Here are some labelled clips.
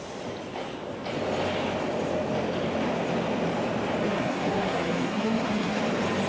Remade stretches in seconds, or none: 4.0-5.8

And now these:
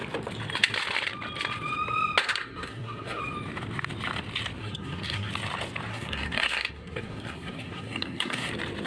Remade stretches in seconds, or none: 2.2-3.2; 4.6-5.3; 5.9-8.5

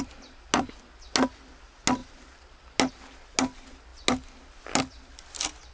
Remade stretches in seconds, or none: none

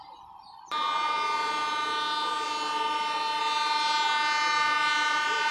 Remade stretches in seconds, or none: none

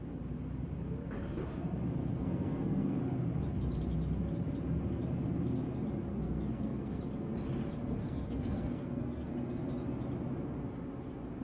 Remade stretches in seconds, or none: 2.0-3.0; 6.1-7.0; 8.0-9.3

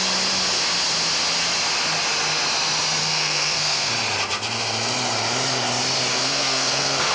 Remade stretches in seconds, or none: 3.0-3.9; 6.1-7.1